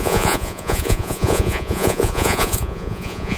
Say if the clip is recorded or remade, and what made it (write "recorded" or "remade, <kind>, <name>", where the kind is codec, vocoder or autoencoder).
remade, vocoder, Vocos